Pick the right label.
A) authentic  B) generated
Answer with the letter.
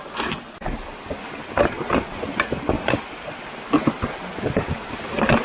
A